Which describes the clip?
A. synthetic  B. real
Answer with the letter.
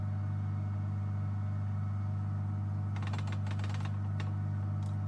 B